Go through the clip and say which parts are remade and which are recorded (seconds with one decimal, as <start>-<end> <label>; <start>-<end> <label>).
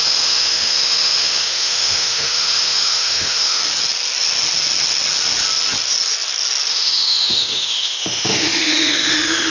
0.0-3.6 remade; 3.6-6.7 recorded; 6.7-9.5 remade